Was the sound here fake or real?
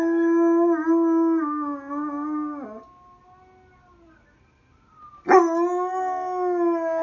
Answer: real